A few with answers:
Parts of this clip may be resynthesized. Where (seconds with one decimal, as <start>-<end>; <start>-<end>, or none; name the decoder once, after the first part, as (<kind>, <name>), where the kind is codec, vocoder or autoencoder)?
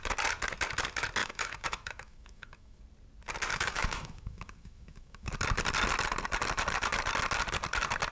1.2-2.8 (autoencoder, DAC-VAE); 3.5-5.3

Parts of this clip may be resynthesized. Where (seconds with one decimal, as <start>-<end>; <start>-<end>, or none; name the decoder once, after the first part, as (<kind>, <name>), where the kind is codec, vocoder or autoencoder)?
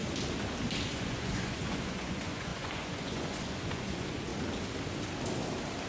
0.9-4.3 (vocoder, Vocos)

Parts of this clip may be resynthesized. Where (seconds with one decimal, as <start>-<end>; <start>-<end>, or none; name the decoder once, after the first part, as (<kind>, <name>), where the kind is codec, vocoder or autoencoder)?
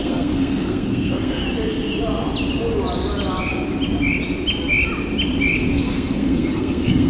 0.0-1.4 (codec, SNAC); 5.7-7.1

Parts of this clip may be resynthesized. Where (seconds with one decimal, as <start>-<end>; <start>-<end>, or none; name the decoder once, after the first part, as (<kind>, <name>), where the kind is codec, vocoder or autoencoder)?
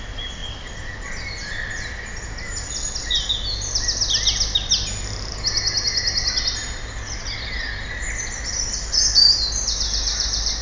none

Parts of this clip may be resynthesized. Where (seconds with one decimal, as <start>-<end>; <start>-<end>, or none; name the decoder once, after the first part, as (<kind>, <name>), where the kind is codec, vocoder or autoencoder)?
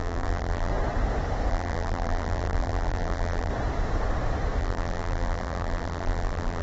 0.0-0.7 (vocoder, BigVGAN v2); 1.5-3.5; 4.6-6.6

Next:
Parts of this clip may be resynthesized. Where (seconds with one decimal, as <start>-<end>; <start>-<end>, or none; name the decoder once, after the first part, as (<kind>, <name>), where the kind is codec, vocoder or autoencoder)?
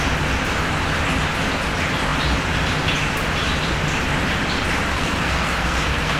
4.9-6.2 (codec, SNAC)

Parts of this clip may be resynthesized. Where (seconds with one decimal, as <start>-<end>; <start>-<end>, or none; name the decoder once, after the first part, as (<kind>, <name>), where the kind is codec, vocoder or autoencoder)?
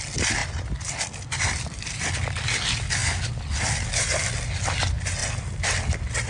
0.4-2.1 (vocoder, BigVGAN v2)